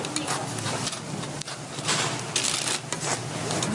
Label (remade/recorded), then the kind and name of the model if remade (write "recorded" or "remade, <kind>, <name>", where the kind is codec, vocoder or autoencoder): recorded